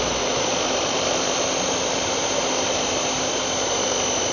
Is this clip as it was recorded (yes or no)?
yes